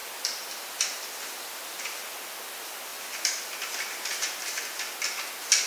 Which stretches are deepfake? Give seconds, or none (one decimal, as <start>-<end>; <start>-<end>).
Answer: 0.0-2.3; 2.9-4.4